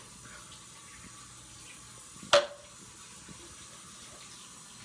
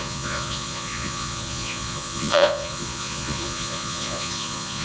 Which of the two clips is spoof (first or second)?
second